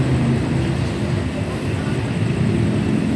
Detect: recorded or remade recorded